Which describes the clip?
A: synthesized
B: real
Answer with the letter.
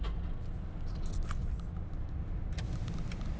B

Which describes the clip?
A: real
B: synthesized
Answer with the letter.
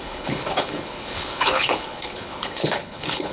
B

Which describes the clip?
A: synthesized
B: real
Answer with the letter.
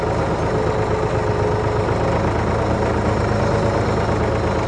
B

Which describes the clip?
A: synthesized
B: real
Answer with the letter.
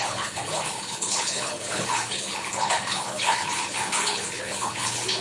A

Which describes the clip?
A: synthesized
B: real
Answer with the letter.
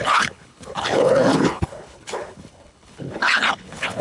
A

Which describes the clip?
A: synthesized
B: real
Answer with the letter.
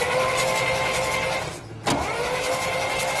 B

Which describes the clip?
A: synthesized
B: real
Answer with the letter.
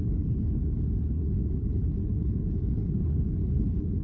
A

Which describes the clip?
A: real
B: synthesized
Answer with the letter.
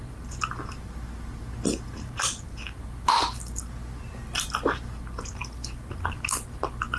A